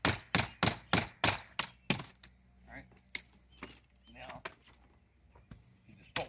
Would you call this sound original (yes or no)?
yes